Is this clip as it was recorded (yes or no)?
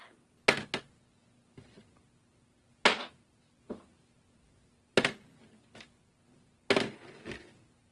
yes